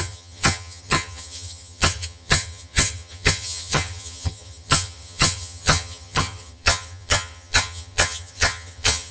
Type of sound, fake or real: fake